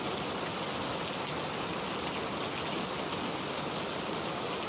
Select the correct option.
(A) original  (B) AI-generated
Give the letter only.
A